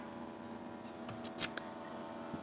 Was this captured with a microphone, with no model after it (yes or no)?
yes